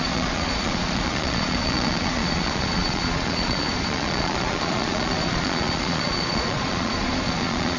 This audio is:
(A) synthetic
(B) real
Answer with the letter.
A